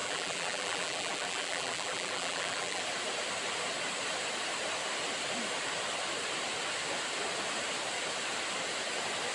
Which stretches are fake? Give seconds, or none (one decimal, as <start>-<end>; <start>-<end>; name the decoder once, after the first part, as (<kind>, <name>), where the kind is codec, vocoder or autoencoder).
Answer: 0.0-2.8 (vocoder, BigVGAN v2)